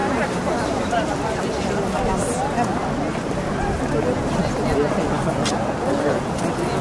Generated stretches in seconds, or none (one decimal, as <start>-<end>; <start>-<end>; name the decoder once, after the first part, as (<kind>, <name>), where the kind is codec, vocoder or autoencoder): 0.0-1.4 (vocoder, BigVGAN v2)